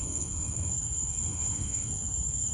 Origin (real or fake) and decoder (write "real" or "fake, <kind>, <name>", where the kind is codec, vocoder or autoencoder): fake, codec, SNAC